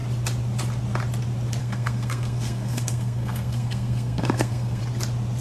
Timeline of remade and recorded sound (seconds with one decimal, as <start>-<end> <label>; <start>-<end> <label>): 0.0-1.6 recorded; 1.6-4.8 remade; 4.8-5.4 recorded